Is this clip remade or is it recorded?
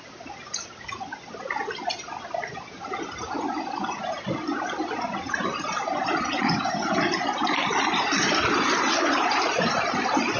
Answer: recorded